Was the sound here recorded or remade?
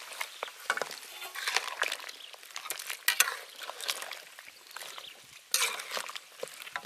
recorded